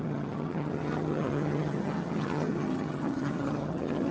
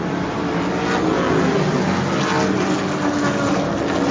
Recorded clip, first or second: second